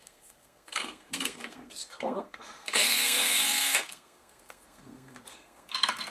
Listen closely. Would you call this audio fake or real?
fake